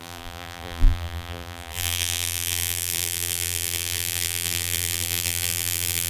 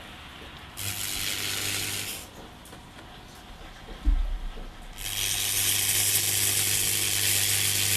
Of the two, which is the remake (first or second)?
first